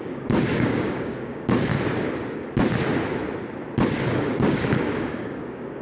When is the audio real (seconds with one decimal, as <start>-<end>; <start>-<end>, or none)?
1.7-4.1